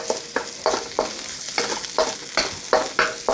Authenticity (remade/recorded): recorded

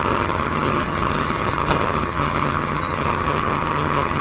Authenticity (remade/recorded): remade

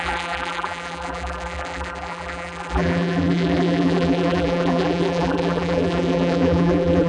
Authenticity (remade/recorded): remade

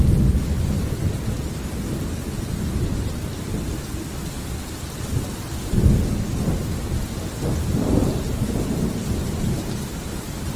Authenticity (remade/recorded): recorded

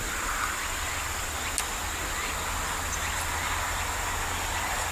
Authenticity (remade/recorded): recorded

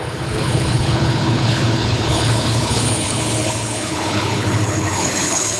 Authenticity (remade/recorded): remade